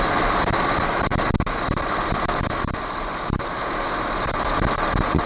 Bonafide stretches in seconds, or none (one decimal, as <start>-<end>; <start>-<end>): 0.0-5.3